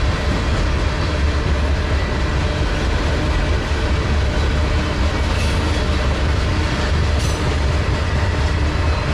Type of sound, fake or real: real